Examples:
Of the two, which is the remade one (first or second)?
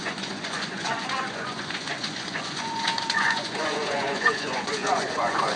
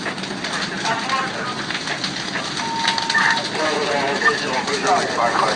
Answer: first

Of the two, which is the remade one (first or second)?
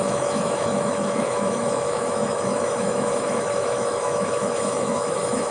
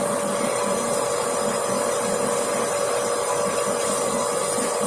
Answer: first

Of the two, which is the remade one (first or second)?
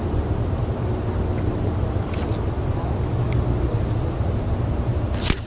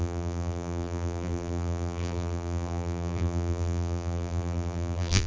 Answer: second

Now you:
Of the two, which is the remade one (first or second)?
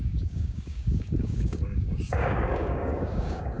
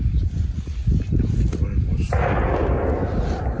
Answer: first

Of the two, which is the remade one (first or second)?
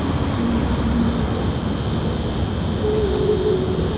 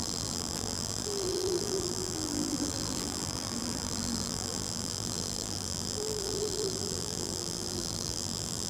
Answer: second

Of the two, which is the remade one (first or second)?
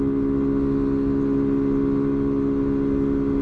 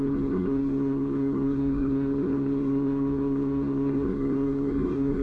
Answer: second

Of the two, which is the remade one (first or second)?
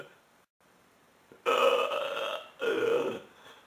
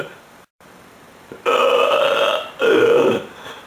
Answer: second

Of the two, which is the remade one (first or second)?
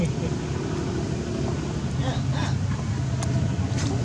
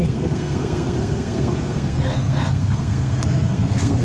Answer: second